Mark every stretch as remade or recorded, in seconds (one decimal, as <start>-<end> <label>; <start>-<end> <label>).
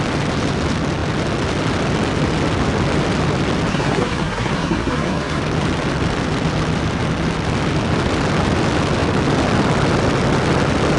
0.0-3.7 recorded; 3.7-5.4 remade; 5.4-11.0 recorded